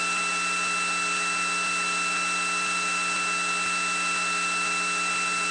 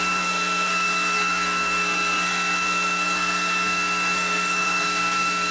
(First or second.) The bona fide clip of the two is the first